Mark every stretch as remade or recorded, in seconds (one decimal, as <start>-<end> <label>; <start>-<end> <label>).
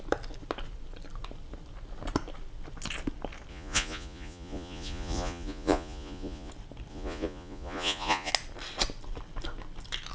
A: 0.0-3.5 recorded; 3.5-6.5 remade; 6.5-6.9 recorded; 6.9-8.3 remade; 8.3-10.1 recorded